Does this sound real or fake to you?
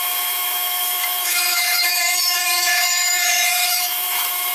fake